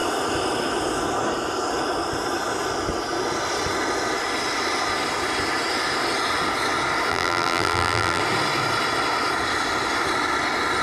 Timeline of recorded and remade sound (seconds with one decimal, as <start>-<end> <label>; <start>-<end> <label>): 0.0-7.1 recorded; 7.1-8.2 remade; 8.2-10.8 recorded